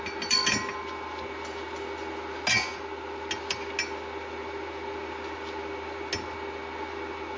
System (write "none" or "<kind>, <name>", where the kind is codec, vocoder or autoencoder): none